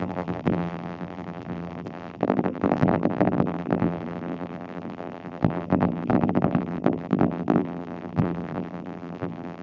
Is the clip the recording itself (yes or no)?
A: no